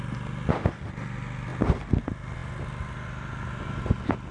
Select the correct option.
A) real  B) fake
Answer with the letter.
A